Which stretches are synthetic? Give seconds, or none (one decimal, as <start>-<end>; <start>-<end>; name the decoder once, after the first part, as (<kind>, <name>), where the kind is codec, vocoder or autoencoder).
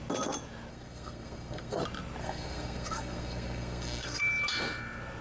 0.7-1.8 (codec, SNAC); 2.2-4.2